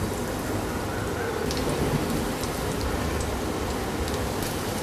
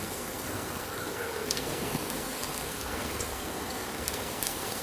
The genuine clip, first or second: first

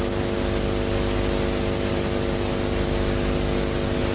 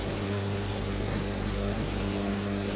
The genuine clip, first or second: first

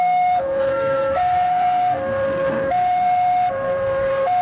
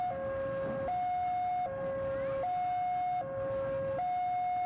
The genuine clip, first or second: second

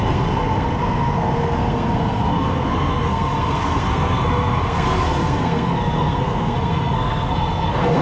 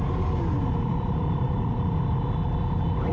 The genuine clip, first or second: second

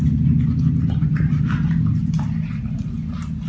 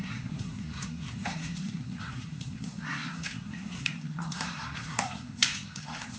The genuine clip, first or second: first